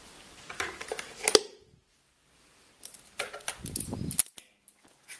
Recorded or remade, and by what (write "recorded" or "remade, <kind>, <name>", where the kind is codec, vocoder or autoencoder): recorded